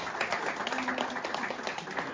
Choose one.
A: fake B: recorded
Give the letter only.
A